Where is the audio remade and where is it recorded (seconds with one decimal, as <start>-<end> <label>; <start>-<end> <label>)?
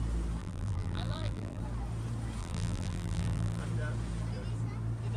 0.0-0.4 recorded; 0.4-1.6 remade; 1.6-2.4 recorded; 2.4-3.6 remade; 3.6-5.2 recorded